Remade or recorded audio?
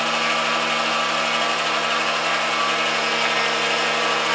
recorded